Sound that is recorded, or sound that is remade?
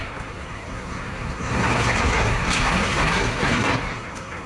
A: remade